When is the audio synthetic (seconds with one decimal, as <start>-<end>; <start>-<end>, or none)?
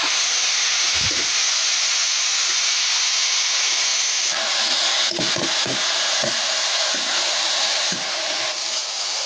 1.4-2.5